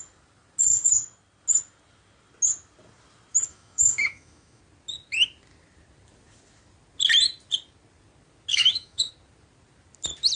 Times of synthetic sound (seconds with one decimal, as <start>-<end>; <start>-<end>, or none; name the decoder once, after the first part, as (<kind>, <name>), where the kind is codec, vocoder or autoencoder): 3.5-4.6 (autoencoder, DAC-VAE); 8.5-9.1